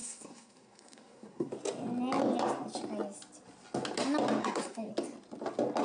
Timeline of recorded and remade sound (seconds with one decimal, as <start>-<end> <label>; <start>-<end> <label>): 0.0-1.5 remade; 1.5-4.4 recorded; 4.4-4.9 remade; 4.9-5.8 recorded